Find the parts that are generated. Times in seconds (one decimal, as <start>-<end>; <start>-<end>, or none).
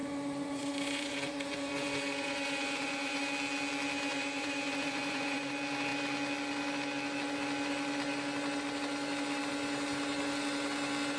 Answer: 0.0-3.2; 4.1-5.5